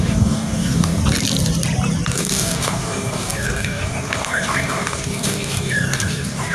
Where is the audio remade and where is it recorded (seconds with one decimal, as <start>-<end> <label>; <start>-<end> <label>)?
0.0-1.0 remade; 1.0-2.1 recorded; 2.1-6.5 remade